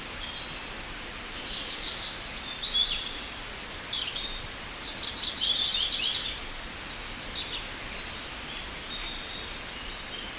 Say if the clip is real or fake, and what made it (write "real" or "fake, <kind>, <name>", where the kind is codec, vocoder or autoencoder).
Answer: real